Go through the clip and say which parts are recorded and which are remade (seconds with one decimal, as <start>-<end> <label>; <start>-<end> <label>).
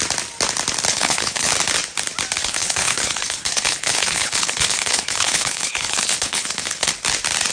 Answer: 0.0-0.9 recorded; 0.9-1.5 remade; 1.5-2.4 recorded; 2.4-6.9 remade; 6.9-7.5 recorded